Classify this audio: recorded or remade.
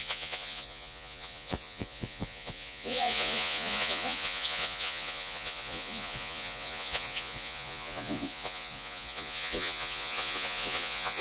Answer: remade